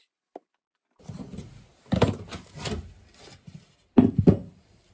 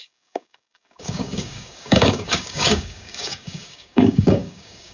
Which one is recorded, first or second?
first